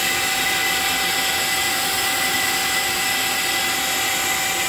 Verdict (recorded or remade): recorded